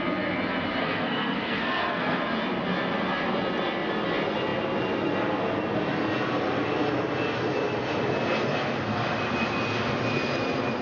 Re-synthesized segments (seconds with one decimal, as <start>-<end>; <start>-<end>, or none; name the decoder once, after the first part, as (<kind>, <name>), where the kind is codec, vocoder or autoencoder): 0.8-2.2 (codec, SNAC)